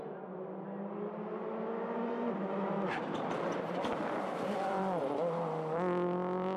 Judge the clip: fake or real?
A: real